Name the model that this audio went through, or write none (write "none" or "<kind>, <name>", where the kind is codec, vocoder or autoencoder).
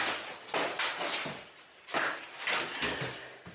none